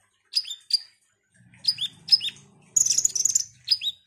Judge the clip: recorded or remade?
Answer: recorded